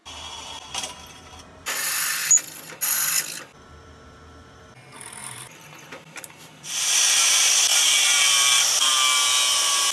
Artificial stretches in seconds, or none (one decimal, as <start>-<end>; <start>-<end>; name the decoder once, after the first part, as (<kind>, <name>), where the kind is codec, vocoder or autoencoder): 5.2-6.9 (vocoder, BigVGAN v2); 7.7-8.9